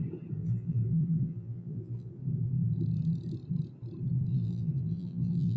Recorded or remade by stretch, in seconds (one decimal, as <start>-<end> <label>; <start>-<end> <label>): 0.0-0.4 recorded; 0.4-2.1 remade; 2.1-4.3 recorded; 4.3-5.6 remade